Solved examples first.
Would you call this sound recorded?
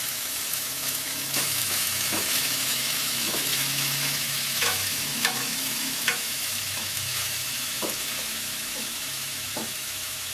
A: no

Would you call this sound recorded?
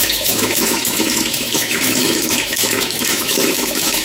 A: no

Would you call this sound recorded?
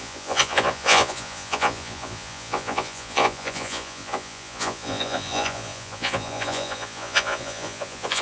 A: no